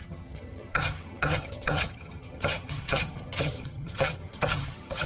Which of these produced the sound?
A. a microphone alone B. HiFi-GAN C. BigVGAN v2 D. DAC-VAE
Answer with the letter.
B